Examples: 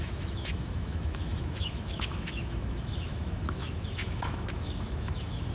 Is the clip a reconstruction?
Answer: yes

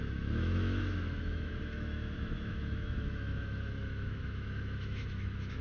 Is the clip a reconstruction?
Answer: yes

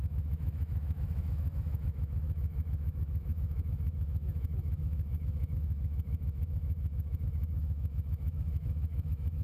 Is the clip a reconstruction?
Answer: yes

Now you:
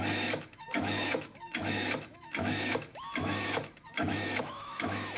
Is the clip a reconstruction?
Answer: yes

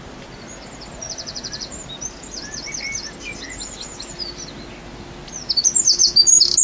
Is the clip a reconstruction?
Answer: no